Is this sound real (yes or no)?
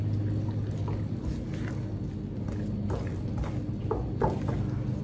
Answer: yes